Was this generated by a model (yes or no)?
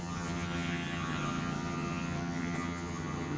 yes